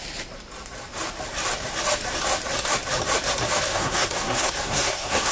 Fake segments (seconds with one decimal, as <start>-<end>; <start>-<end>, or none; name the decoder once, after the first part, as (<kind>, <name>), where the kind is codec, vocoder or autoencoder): 3.7-5.3 (codec, SNAC)